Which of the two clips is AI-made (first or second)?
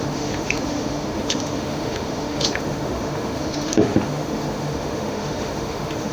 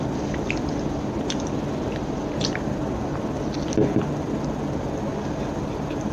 first